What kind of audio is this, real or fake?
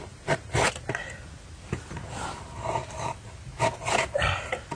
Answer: real